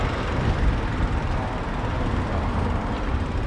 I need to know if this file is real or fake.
real